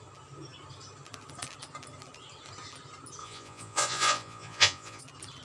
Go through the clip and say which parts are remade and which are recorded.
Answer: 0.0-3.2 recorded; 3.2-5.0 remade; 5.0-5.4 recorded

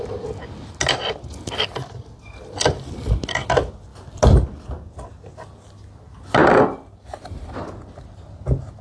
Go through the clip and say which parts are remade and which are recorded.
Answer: 0.0-8.8 recorded

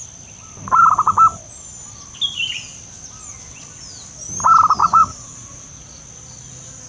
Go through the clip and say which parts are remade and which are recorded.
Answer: 0.0-4.8 recorded; 4.8-6.0 remade; 6.0-6.9 recorded

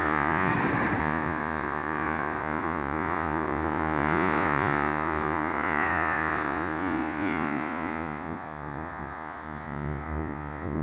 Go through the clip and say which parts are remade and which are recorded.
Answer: 0.0-0.5 remade; 0.5-1.0 recorded; 1.0-10.8 remade